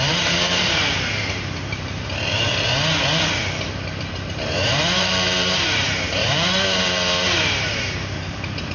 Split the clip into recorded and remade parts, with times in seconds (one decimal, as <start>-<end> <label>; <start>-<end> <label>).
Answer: 0.0-2.7 remade; 2.7-3.6 recorded; 3.6-8.7 remade